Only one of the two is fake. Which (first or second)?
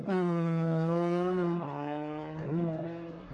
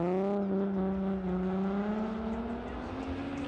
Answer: first